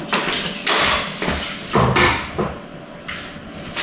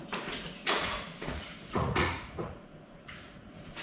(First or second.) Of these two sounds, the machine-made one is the second